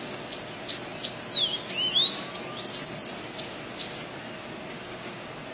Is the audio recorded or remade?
recorded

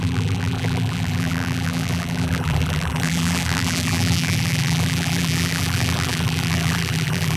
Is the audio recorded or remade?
remade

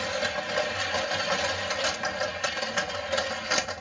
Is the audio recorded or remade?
recorded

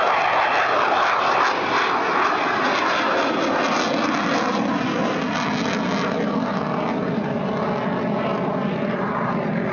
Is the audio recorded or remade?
recorded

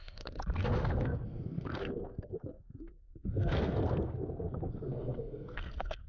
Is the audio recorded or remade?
remade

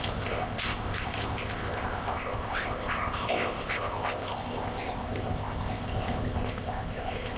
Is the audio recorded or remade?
remade